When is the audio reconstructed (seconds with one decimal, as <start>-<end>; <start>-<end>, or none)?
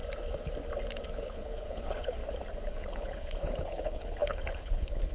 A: 1.1-2.2; 2.7-5.1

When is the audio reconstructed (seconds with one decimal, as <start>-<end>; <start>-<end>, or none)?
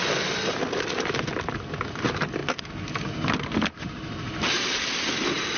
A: none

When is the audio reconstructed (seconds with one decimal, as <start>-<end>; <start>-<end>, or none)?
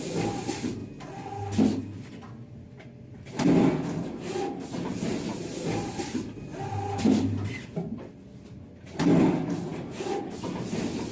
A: none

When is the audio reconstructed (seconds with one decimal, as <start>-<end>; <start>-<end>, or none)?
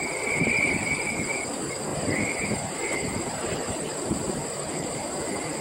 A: 1.9-3.7; 4.4-5.1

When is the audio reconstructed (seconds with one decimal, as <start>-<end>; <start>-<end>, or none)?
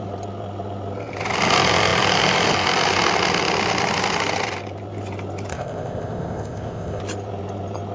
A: 5.5-7.0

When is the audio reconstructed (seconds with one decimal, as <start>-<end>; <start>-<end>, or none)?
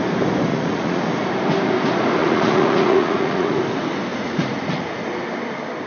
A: 0.5-1.0; 2.2-3.6; 4.1-5.0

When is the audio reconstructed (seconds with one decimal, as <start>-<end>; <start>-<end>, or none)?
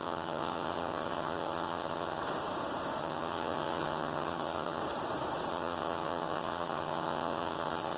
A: 0.0-2.2; 3.0-4.8; 5.5-8.0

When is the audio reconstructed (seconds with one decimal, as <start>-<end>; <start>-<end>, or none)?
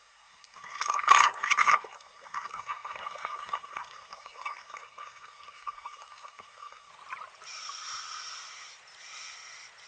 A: 0.0-6.9